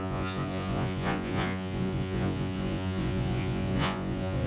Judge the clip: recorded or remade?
remade